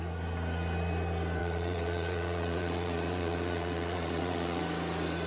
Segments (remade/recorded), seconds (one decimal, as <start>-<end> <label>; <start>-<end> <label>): 0.0-1.4 recorded; 1.4-4.6 remade; 4.6-5.3 recorded